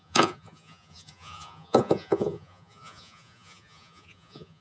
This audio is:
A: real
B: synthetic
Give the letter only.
B